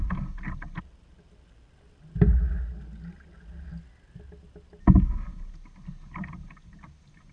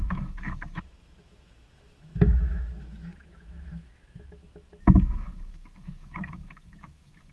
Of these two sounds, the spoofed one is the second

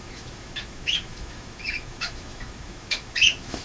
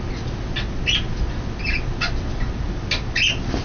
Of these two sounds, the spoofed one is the first